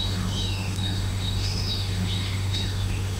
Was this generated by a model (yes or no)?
yes